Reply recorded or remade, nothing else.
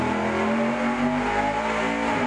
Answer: recorded